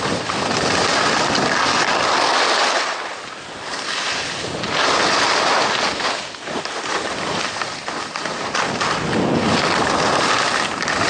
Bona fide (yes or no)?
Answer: yes